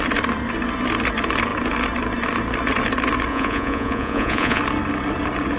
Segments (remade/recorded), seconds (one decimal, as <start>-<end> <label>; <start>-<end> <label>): 0.0-3.3 recorded; 3.3-4.6 remade; 4.6-5.6 recorded